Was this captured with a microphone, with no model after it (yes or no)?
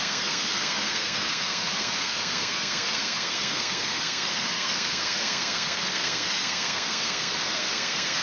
no